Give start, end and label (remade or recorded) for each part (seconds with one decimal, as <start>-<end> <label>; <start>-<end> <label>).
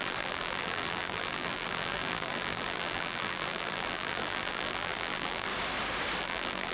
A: 0.0-5.5 remade; 5.5-6.2 recorded; 6.2-6.7 remade